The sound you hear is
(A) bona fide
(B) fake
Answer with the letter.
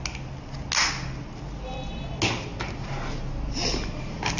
A